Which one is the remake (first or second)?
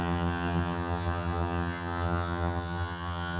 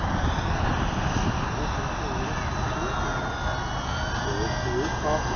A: first